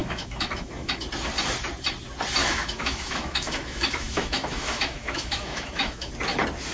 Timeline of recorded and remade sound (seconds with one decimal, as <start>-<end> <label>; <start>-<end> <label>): 0.0-1.0 remade; 1.0-2.4 recorded; 2.4-6.1 remade; 6.1-6.7 recorded